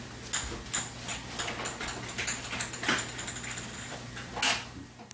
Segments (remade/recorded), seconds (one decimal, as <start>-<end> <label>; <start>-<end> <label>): 0.0-5.1 recorded